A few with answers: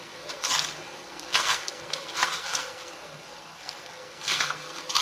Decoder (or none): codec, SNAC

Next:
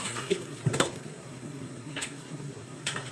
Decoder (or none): codec, SNAC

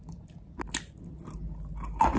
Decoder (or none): none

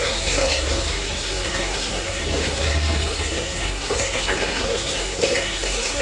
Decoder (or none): codec, SNAC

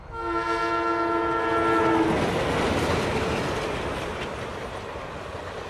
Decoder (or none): none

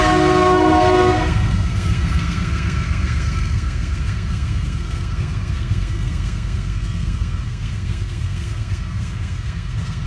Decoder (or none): codec, SNAC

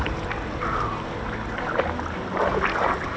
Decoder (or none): none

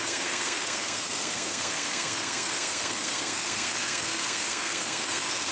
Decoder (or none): codec, SNAC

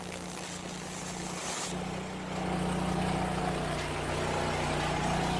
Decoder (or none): none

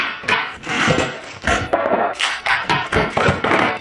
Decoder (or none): codec, SNAC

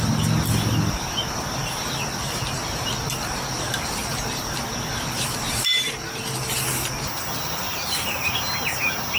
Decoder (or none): none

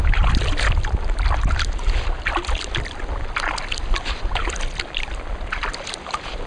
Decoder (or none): none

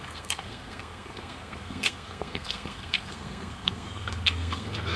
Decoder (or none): codec, SNAC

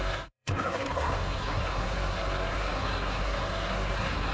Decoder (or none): codec, SNAC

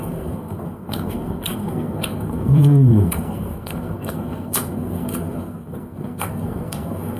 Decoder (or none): codec, SNAC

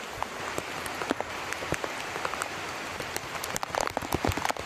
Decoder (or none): none